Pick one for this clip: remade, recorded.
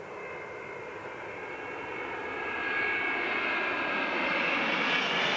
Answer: recorded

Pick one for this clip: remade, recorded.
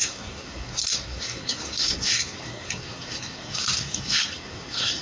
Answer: remade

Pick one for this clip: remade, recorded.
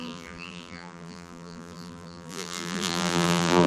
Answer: remade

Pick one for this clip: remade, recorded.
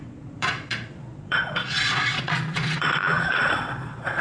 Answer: remade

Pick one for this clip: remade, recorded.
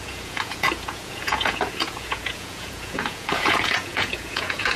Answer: remade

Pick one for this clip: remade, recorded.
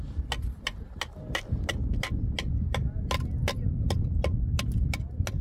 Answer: recorded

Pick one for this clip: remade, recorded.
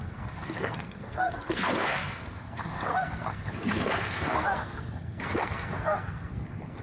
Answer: remade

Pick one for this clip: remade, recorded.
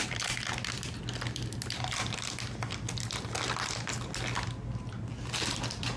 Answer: recorded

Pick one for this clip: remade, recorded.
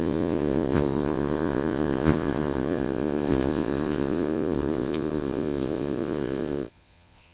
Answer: remade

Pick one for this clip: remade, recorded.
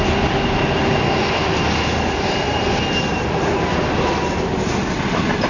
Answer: recorded